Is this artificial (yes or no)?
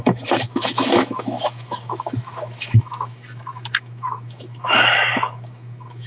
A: yes